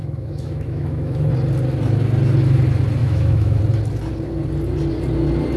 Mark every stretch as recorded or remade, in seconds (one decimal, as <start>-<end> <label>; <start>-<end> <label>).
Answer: 0.0-1.3 remade; 1.3-3.0 recorded; 3.0-3.6 remade; 3.6-5.6 recorded